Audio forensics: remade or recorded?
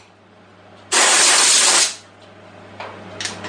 recorded